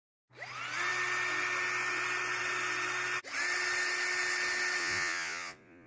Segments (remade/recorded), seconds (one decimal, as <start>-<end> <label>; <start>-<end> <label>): 0.0-4.8 recorded; 4.8-5.9 remade